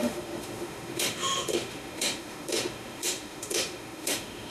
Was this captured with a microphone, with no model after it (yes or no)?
no